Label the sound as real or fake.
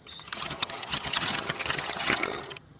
fake